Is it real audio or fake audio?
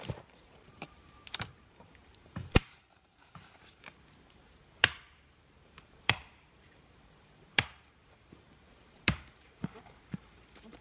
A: fake